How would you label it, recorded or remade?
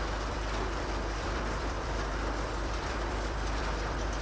remade